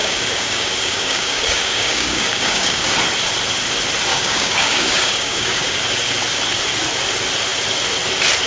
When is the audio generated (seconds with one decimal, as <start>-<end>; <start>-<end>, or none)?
0.0-2.9; 4.1-5.8